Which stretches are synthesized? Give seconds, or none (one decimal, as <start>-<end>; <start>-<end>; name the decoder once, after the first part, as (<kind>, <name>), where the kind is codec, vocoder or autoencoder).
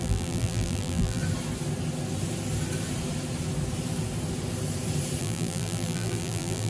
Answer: 0.0-1.2 (vocoder, BigVGAN v2); 5.2-6.7